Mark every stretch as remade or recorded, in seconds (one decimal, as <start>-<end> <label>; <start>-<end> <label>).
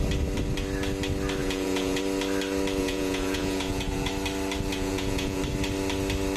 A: 0.0-1.4 recorded; 1.4-2.0 remade; 2.0-2.8 recorded; 2.8-4.1 remade; 4.1-4.7 recorded; 4.7-5.4 remade; 5.4-6.4 recorded